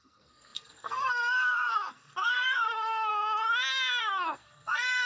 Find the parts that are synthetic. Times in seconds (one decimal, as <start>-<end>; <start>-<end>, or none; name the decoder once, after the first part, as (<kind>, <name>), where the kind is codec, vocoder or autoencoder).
0.0-3.1 (codec, SNAC); 4.0-5.1